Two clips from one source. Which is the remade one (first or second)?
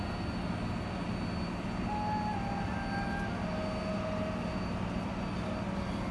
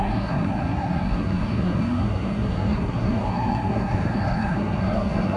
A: second